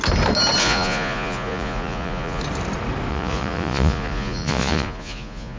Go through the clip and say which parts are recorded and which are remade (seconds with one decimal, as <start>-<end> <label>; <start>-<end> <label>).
0.0-0.6 recorded; 0.6-2.4 remade; 2.4-3.1 recorded; 3.1-5.6 remade